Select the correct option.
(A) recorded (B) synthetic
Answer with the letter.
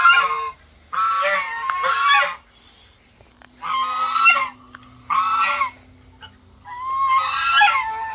A